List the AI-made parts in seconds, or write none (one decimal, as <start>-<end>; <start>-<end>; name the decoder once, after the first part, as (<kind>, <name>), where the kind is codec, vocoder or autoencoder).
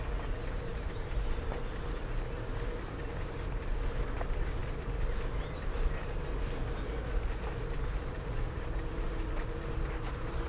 none